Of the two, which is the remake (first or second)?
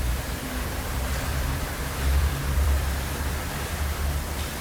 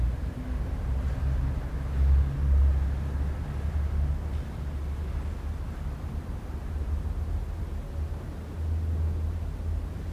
first